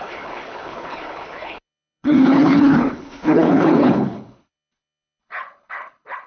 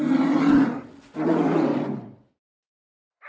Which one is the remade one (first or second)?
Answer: first